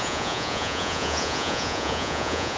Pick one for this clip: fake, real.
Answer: fake